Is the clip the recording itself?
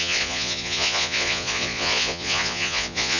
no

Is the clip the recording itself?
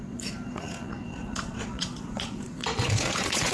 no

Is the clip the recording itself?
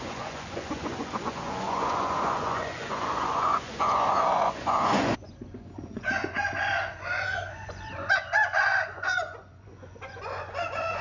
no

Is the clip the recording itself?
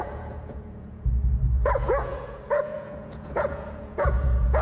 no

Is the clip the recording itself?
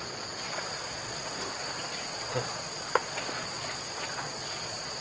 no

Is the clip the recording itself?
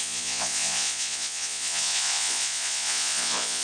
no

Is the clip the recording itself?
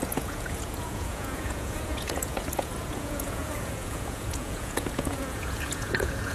no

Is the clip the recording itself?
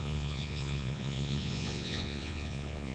no